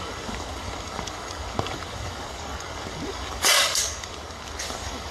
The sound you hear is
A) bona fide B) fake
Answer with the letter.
B